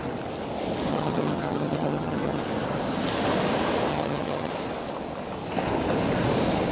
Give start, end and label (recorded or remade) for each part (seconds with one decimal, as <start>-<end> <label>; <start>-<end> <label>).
0.0-0.9 recorded; 0.9-2.4 remade; 2.4-3.9 recorded; 3.9-4.5 remade; 4.5-6.7 recorded